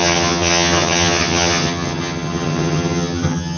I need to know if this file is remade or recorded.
remade